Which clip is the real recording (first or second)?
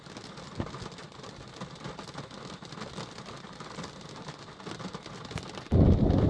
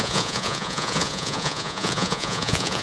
first